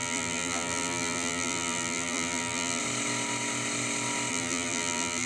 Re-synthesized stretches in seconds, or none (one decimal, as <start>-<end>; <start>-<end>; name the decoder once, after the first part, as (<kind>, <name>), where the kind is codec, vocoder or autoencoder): 0.0-2.8 (vocoder, BigVGAN v2); 4.3-5.3